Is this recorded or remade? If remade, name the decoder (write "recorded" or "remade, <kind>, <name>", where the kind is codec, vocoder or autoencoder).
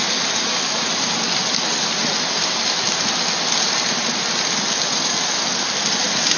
recorded